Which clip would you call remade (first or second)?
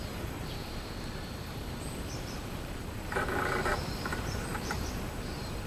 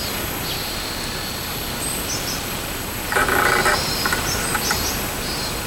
first